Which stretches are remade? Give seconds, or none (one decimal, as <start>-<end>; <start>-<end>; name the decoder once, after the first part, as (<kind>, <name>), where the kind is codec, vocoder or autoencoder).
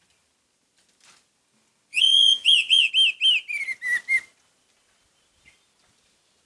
1.9-2.9 (vocoder, Vocos)